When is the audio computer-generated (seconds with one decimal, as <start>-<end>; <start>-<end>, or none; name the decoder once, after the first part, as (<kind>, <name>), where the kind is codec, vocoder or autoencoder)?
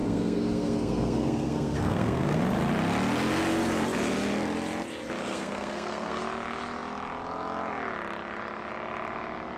0.0-2.4 (codec, SNAC); 5.2-6.2